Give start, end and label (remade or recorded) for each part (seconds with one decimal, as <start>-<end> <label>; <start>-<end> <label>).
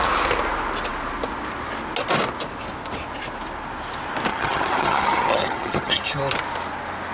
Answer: 0.0-4.3 recorded; 4.3-6.2 remade; 6.2-7.1 recorded